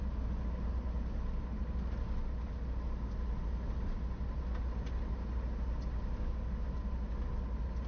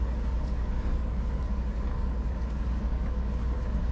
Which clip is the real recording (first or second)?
first